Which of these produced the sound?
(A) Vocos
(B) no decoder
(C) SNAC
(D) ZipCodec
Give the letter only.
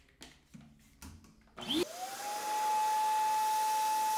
B